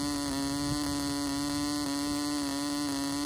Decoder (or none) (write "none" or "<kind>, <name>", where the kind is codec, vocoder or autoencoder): none